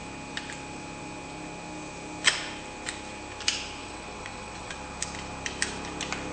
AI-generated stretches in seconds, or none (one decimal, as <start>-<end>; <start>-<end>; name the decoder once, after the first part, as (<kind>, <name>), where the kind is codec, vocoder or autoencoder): 3.8-4.7 (vocoder, WaveNeXt)